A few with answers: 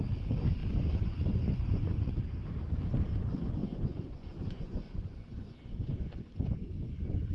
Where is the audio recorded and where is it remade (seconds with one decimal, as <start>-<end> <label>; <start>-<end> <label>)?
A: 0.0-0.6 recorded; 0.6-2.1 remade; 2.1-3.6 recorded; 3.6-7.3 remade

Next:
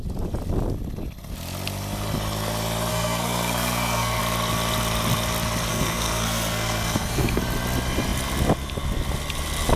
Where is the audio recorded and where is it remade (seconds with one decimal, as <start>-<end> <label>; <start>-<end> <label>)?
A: 0.0-2.9 recorded; 2.9-4.2 remade; 4.2-5.7 recorded; 5.7-7.4 remade; 7.4-9.8 recorded

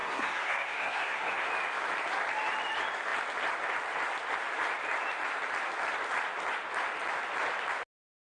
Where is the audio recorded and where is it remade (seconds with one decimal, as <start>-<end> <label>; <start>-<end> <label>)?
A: 0.0-1.5 remade; 1.5-8.3 recorded